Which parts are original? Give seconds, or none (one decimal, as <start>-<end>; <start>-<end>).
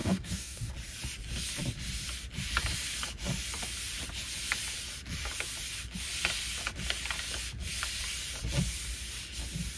0.7-9.8